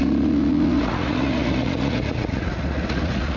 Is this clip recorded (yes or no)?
no